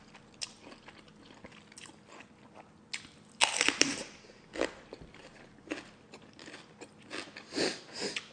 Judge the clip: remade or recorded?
recorded